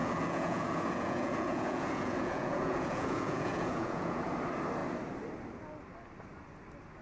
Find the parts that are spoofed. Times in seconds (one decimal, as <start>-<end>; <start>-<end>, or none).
0.0-4.2